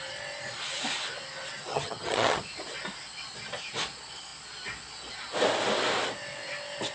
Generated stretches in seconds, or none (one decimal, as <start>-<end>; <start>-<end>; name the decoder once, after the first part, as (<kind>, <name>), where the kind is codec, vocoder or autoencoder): 1.7-2.4 (vocoder, HiFi-GAN)